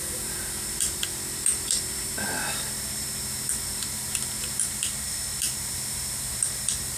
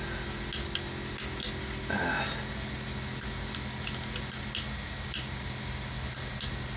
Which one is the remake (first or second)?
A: first